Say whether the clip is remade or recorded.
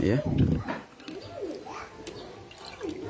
recorded